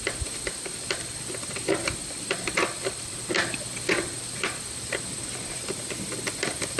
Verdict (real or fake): real